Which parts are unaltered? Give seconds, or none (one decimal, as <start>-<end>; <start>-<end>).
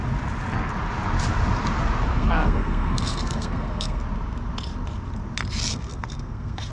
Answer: 0.0-2.1; 4.0-5.7